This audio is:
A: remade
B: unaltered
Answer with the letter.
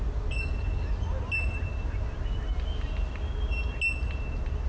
B